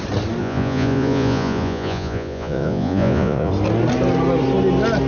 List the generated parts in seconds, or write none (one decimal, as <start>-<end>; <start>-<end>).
0.4-3.5